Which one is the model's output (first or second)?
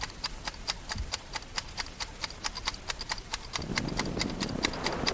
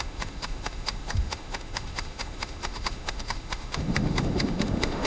second